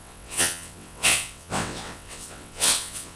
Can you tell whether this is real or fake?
fake